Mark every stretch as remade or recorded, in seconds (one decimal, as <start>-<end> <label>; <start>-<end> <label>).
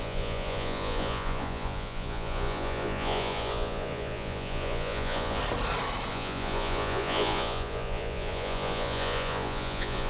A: 0.0-5.4 remade; 5.4-6.1 recorded; 6.1-10.1 remade